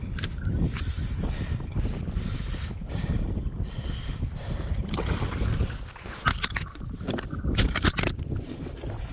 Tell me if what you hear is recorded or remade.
recorded